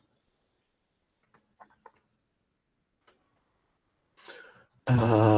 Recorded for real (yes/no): yes